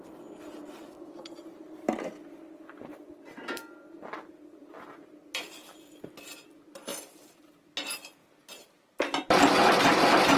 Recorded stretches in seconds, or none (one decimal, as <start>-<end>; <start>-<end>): 0.0-2.9; 3.6-4.6; 5.9-6.9; 7.4-10.4